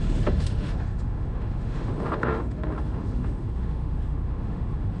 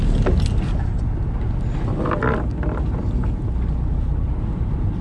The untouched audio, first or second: second